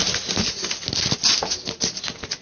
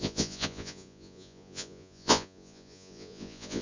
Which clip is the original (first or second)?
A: first